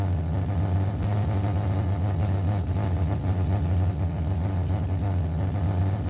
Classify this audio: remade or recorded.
recorded